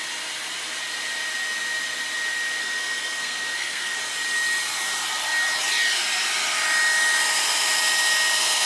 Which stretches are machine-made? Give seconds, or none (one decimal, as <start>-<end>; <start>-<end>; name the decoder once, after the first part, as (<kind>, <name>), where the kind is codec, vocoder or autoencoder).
2.6-4.0 (codec, SNAC)